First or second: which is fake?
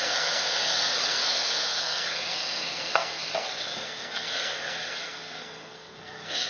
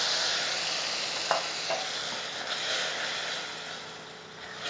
first